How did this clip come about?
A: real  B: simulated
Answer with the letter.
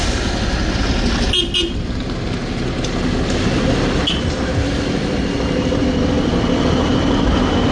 A